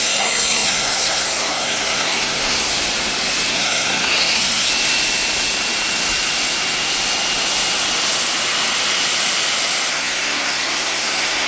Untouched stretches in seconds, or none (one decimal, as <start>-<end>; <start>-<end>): 2.7-3.5; 4.7-9.9